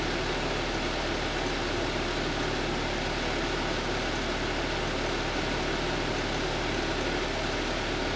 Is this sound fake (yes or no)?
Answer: no